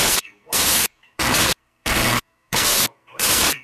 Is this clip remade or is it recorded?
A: remade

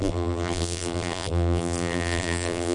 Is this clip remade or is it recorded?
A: remade